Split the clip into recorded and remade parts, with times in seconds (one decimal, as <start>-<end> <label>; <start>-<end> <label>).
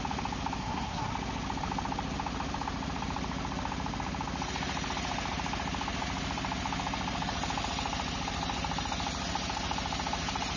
0.0-0.6 recorded; 0.6-1.1 remade; 1.1-10.6 recorded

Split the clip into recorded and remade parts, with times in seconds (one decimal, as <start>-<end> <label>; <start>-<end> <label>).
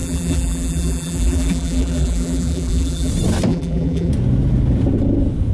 0.0-3.1 remade; 3.1-3.5 recorded; 3.5-4.1 remade; 4.1-5.5 recorded